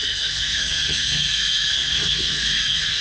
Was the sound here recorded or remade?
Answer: remade